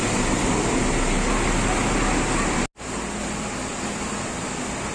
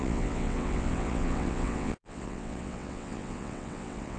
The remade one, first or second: second